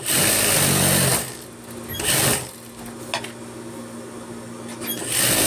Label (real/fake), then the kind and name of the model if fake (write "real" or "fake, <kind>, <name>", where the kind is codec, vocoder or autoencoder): real